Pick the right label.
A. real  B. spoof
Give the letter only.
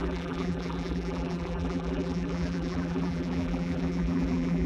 B